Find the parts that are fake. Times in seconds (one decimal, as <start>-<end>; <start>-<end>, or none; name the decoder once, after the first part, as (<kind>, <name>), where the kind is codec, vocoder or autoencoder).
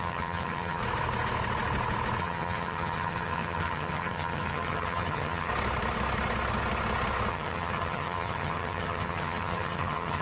0.0-0.8 (vocoder, HiFi-GAN); 2.2-5.5; 7.3-10.2